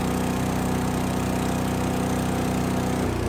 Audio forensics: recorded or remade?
recorded